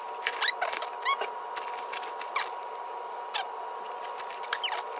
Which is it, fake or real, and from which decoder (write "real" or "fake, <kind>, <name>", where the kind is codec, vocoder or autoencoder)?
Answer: real